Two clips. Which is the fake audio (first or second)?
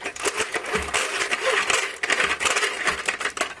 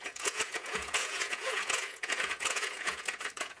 second